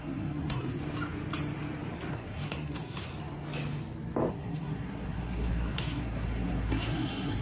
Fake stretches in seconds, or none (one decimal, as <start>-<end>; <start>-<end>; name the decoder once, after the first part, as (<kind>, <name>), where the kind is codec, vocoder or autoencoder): 0.0-0.8 (codec, SNAC); 2.1-3.1; 4.3-7.4